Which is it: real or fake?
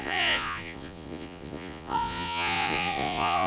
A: fake